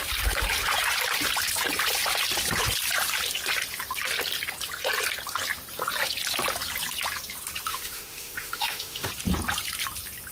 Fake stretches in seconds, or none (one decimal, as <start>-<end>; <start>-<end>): 7.7-9.1